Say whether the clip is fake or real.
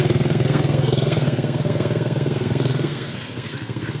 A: fake